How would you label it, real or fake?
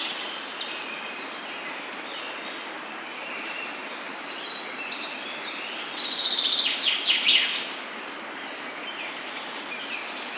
real